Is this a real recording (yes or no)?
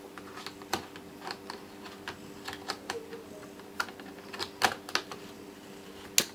yes